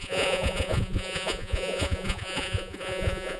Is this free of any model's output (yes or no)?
no